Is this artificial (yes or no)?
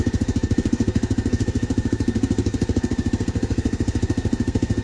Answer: yes